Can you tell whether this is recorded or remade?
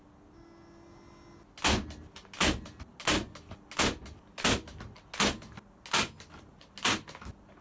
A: recorded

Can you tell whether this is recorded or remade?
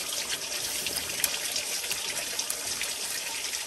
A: recorded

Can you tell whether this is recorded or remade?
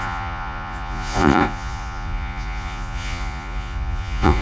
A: remade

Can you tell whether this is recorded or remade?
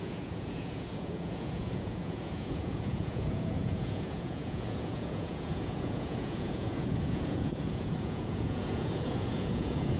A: remade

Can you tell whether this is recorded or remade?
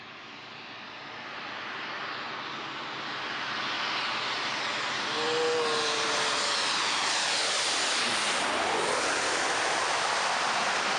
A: recorded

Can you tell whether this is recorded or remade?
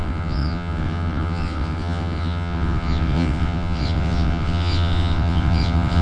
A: remade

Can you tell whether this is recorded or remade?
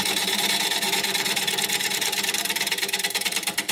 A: remade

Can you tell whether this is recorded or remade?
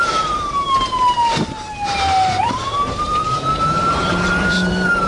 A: remade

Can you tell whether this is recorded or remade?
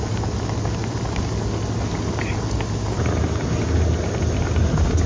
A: recorded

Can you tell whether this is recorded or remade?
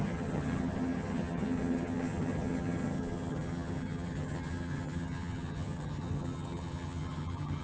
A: remade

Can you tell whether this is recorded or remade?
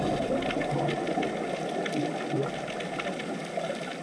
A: recorded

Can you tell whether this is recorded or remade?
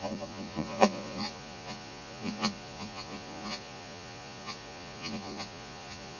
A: remade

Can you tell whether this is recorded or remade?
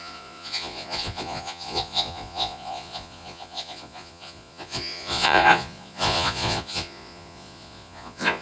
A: remade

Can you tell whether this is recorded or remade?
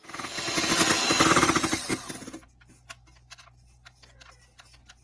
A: recorded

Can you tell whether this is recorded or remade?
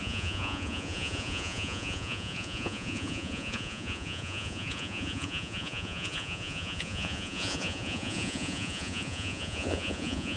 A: remade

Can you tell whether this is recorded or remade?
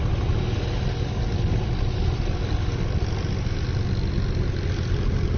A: recorded